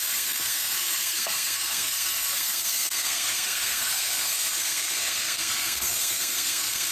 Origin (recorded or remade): remade